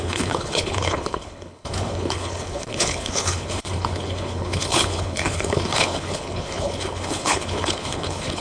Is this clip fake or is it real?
fake